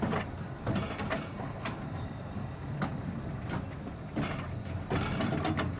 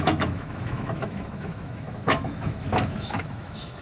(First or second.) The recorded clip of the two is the first